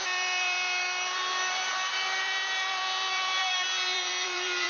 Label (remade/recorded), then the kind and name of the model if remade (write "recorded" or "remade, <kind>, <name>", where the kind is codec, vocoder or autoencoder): remade, vocoder, BigVGAN v2